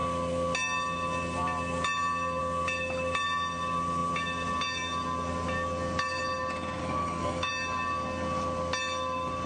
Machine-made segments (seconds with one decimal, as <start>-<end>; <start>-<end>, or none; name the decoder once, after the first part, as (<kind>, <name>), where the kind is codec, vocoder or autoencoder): 6.8-7.5 (codec, DAC)